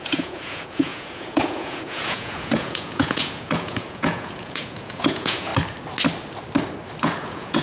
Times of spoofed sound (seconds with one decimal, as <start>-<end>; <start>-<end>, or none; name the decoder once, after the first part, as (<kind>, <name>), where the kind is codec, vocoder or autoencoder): 0.0-5.5 (vocoder, Vocos); 7.0-7.6